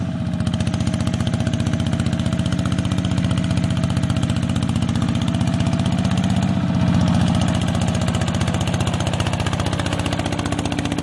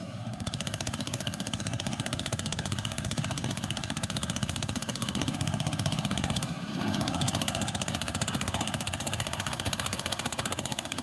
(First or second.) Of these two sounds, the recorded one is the first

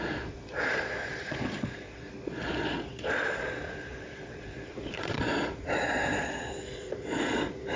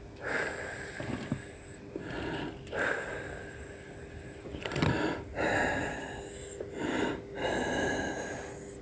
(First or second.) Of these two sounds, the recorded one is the second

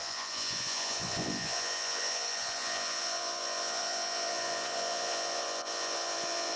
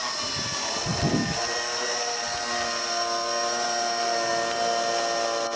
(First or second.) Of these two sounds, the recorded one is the second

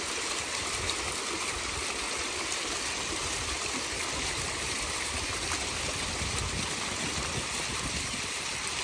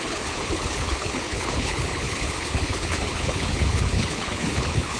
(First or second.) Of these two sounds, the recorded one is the first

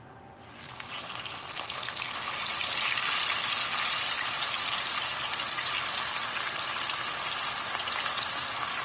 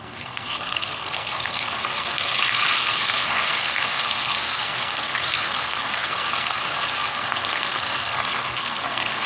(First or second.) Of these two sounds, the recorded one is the first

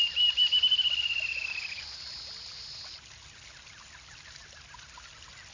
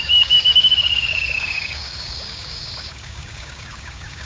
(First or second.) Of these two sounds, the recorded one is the first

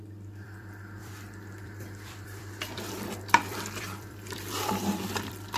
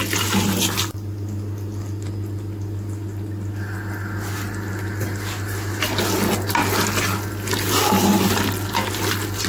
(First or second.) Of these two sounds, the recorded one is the second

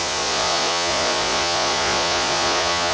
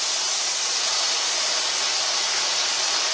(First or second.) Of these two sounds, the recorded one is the second